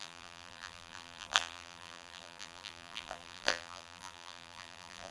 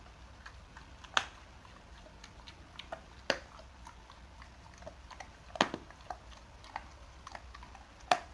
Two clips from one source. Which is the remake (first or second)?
first